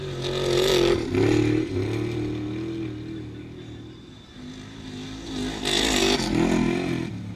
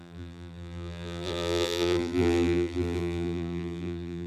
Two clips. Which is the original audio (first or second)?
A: first